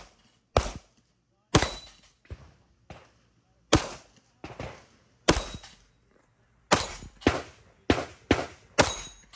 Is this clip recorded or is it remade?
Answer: recorded